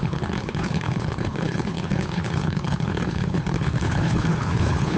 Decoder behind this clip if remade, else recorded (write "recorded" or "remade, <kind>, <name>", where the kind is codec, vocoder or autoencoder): remade, codec, HILCodec